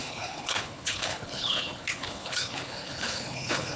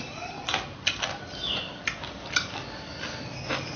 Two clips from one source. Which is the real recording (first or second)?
second